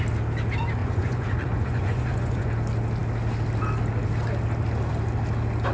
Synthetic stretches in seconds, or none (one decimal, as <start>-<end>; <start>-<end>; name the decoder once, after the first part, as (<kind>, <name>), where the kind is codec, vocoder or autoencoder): 0.8-2.5 (vocoder, Vocos)